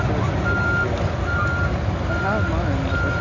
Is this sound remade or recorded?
recorded